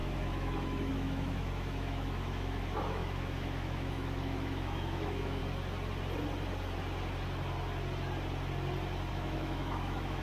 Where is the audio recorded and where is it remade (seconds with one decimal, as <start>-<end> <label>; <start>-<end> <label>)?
0.0-5.4 remade; 5.4-9.1 recorded; 9.1-10.2 remade